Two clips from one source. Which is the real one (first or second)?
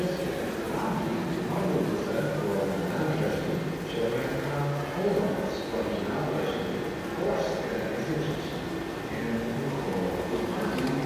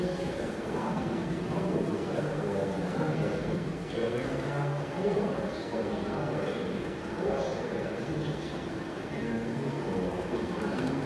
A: first